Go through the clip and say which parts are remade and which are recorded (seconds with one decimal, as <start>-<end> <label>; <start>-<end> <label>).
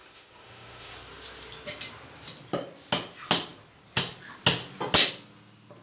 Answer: 0.0-0.9 remade; 0.9-5.8 recorded